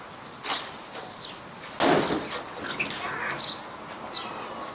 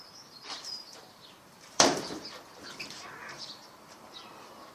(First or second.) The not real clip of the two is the second